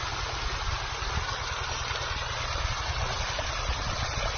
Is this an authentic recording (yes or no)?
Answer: yes